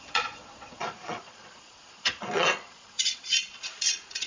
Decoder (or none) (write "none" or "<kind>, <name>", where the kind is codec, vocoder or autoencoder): vocoder, Vocos